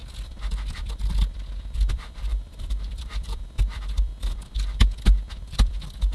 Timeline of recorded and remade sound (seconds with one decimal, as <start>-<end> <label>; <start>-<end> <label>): 0.0-1.9 recorded; 1.9-4.1 remade; 4.1-5.3 recorded; 5.3-6.1 remade